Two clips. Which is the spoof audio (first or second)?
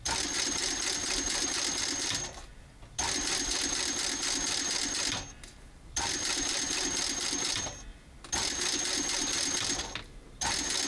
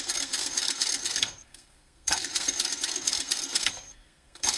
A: second